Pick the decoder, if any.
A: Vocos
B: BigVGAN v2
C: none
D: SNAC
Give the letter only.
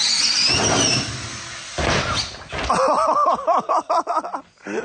C